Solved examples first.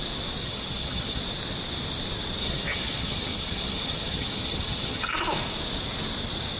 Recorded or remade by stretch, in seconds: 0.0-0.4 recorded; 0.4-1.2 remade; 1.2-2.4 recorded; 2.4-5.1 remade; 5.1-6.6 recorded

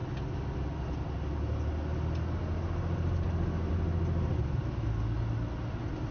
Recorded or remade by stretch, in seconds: 0.0-6.1 recorded